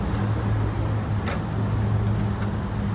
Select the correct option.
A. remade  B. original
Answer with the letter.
B